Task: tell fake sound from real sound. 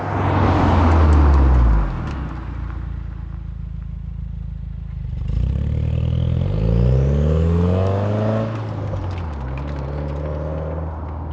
real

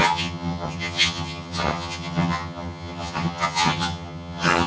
fake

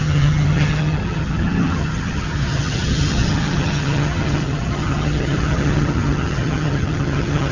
fake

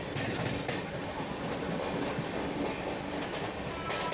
real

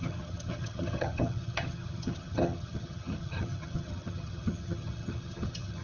fake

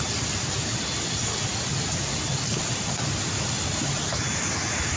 real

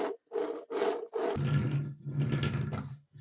real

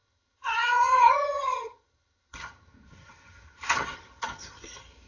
fake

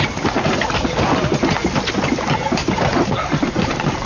real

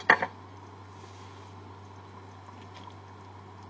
real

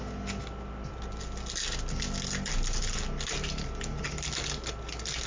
real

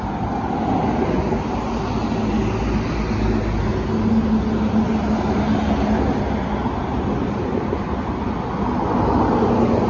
real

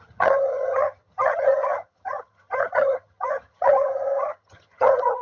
fake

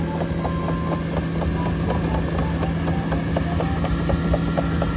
real